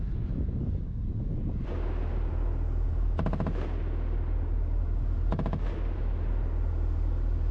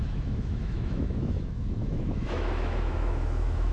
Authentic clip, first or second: first